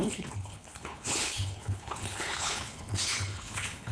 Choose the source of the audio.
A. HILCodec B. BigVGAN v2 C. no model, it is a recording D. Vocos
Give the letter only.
A